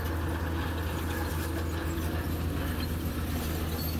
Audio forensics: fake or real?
real